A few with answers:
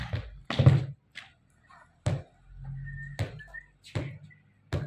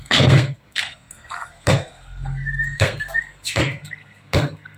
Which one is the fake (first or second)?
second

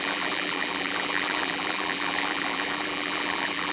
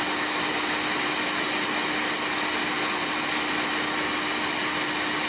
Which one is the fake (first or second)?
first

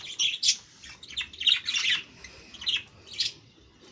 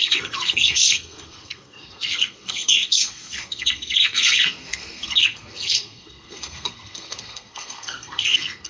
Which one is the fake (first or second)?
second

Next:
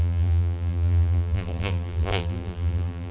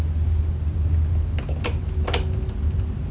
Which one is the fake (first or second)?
first